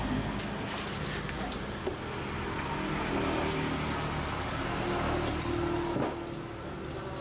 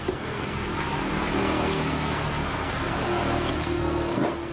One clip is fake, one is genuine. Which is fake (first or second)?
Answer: second